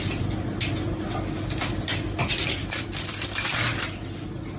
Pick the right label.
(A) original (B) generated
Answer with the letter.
A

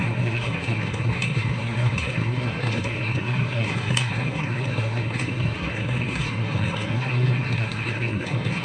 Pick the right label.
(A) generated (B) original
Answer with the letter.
A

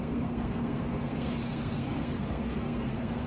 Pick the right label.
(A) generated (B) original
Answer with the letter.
A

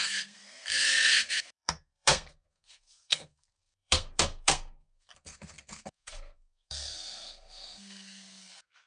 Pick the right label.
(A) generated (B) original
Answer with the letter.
A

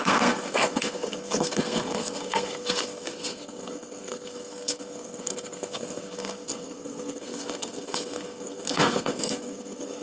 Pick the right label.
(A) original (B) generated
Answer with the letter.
B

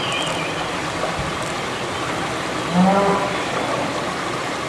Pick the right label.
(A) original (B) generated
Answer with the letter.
A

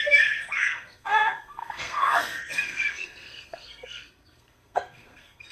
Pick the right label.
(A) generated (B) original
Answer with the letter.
A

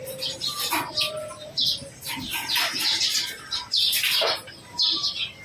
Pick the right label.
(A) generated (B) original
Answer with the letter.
B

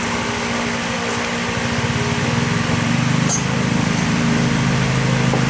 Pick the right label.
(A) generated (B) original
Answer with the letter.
B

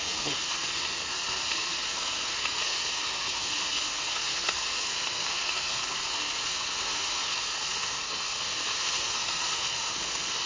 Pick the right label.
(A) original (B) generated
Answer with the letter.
B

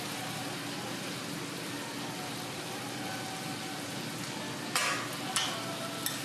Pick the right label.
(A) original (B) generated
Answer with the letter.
A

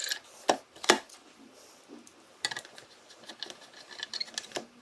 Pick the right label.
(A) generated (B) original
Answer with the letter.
B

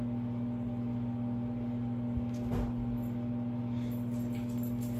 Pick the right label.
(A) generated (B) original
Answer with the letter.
B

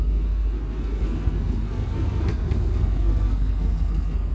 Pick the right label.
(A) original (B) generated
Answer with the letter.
B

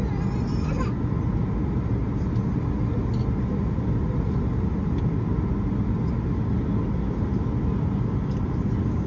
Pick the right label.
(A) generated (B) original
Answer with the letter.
B